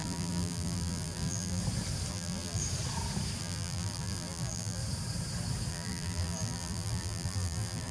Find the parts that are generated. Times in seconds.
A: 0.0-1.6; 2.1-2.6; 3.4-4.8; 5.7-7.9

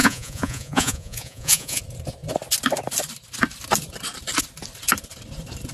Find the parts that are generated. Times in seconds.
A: 0.0-1.8

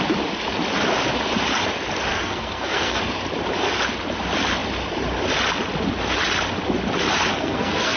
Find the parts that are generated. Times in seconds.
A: 2.1-3.0; 7.3-8.0

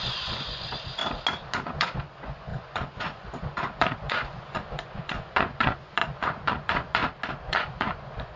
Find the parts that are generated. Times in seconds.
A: 0.0-1.0; 1.6-7.0; 7.5-8.4

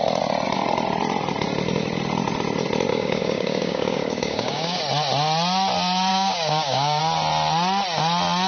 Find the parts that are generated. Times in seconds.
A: 2.9-4.8; 6.1-7.0

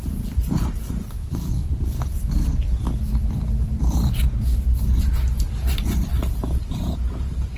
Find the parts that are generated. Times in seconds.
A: 1.2-1.7

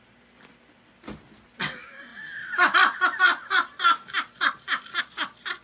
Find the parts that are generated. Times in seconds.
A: none